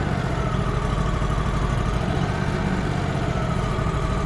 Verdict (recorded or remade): remade